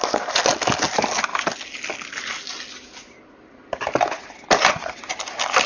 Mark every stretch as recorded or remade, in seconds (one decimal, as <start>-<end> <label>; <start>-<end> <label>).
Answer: 0.0-5.7 recorded

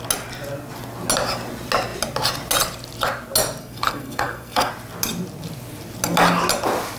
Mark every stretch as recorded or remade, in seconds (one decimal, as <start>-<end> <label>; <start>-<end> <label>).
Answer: 0.0-3.6 recorded; 3.6-4.7 remade; 4.7-7.0 recorded